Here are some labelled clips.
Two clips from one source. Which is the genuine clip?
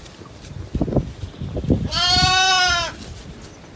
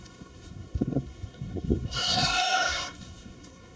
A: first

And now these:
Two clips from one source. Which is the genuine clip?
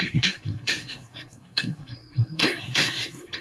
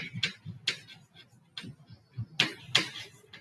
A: second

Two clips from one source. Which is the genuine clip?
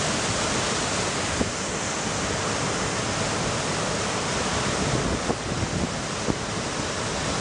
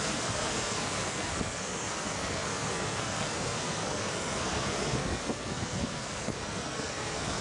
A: first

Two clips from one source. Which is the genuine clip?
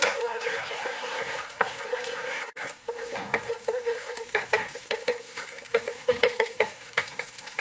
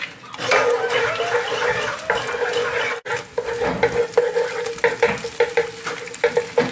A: second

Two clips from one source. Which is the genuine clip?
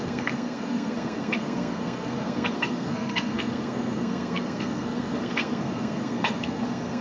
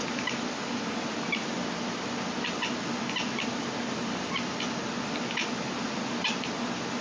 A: second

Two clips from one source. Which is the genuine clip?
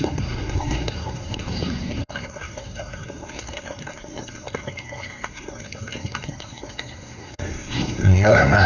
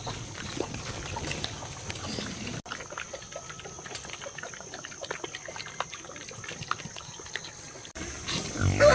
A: second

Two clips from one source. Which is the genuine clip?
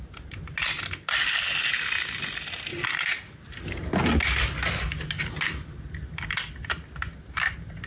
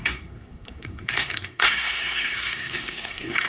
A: first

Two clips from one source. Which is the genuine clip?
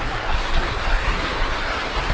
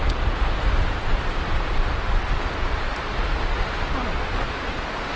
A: second